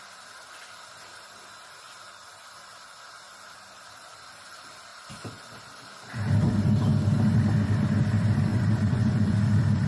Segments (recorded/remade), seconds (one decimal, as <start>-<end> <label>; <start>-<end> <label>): 0.0-8.5 recorded; 8.5-9.4 remade; 9.4-9.9 recorded